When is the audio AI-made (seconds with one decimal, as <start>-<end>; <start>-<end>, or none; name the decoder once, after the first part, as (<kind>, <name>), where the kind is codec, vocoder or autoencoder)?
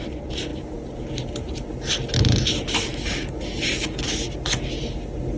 none